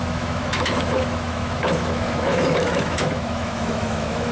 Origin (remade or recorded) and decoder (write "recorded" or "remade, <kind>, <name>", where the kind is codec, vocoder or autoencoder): remade, autoencoder, DAC-VAE